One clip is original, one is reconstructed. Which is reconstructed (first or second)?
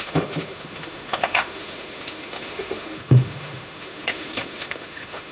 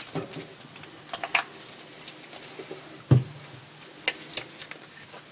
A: first